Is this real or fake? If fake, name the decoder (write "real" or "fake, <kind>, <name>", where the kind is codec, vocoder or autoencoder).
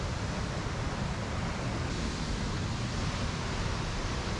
real